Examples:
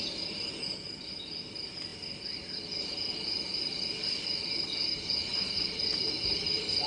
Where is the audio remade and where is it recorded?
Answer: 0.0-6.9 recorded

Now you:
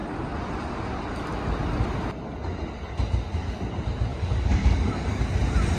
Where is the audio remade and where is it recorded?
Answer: 0.0-4.1 recorded; 4.1-5.2 remade; 5.2-5.8 recorded

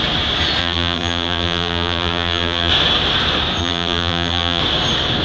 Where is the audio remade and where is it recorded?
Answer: 0.0-0.6 recorded; 0.6-2.7 remade; 2.7-3.6 recorded; 3.6-4.6 remade; 4.6-5.2 recorded

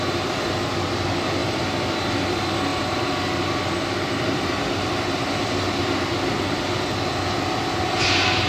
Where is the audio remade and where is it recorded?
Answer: 0.0-1.4 recorded; 1.4-2.0 remade; 2.0-2.7 recorded; 2.7-5.4 remade; 5.4-8.5 recorded

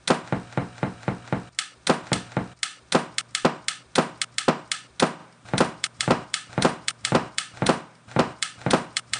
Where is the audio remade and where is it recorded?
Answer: 0.0-0.6 recorded; 0.6-1.1 remade; 1.1-5.2 recorded; 5.2-9.2 remade